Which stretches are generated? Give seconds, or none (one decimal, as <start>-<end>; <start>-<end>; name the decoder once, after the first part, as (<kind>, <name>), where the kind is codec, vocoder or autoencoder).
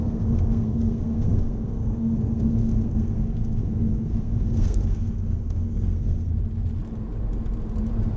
0.0-6.3 (codec, SNAC)